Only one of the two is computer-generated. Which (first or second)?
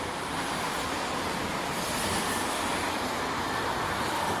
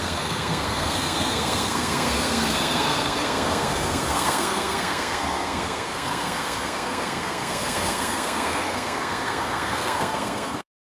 second